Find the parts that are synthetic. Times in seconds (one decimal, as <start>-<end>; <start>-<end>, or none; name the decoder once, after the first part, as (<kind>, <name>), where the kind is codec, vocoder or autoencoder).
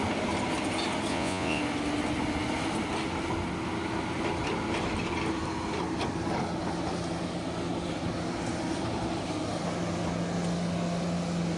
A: 1.1-1.6 (vocoder, Vocos)